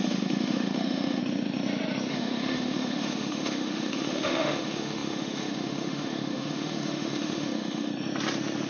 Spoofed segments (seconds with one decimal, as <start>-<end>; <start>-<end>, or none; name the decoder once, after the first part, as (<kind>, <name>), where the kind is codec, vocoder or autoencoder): 0.0-1.2 (autoencoder, DAC-VAE); 2.1-7.9